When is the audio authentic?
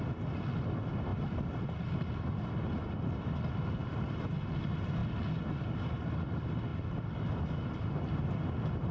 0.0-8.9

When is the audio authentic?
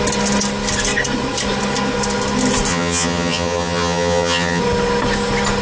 0.0-2.7; 4.6-5.6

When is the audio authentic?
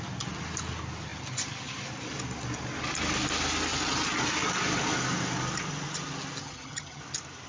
0.0-6.4; 7.0-7.5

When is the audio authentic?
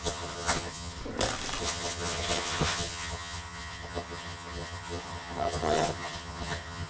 1.0-1.6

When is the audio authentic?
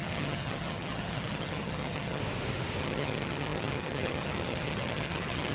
2.2-2.8